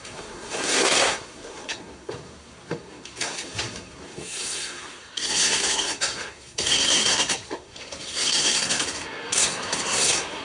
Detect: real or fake fake